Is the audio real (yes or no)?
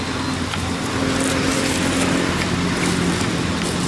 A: yes